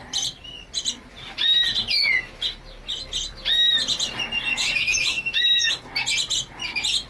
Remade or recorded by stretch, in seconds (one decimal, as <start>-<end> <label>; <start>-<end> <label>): 0.0-4.5 recorded; 4.5-5.8 remade; 5.8-7.1 recorded